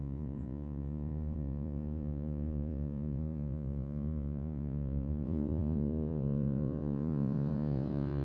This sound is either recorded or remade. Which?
remade